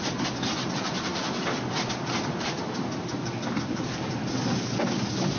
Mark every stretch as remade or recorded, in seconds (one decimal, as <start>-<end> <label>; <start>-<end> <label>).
0.0-5.4 recorded